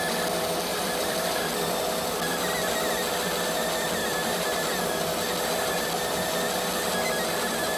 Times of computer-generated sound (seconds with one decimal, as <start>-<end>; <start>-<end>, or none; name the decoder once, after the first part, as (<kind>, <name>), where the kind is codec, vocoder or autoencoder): 0.7-1.4 (vocoder, BigVGAN v2); 4.0-4.7